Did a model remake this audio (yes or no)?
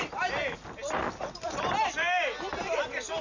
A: no